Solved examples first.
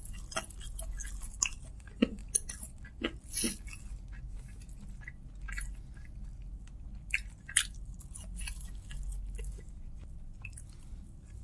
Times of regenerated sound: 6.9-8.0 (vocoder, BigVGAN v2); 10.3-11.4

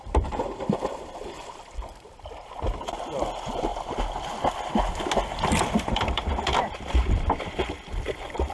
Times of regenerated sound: 0.0-3.7 (vocoder, BigVGAN v2); 5.5-8.5

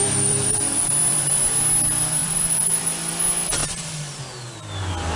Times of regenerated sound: 0.0-1.4 (vocoder, BigVGAN v2); 2.2-3.1; 3.6-4.2

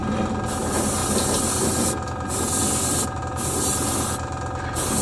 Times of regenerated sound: none

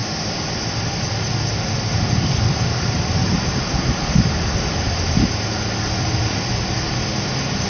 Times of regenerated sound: 3.2-5.3 (vocoder, BigVGAN v2)

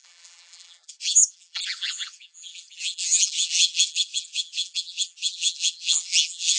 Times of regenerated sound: 0.0-6.6 (vocoder, BigVGAN v2)

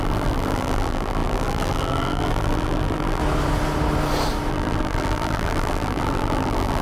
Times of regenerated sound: 0.0-3.2 (vocoder, BigVGAN v2); 4.5-6.8